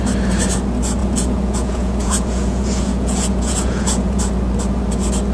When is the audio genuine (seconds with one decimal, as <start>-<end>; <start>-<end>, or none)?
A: 0.0-1.0; 4.2-5.3